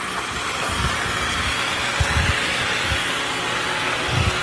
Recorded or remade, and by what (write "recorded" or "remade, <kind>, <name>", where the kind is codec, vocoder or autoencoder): recorded